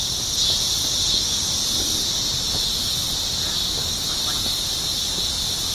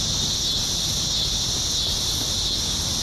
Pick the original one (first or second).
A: second